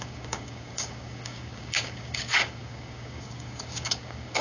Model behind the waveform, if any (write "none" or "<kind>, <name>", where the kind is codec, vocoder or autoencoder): codec, DAC